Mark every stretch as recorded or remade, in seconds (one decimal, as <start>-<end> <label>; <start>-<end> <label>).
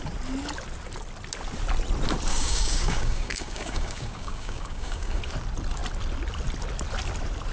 0.0-2.3 recorded; 2.3-5.2 remade; 5.2-7.5 recorded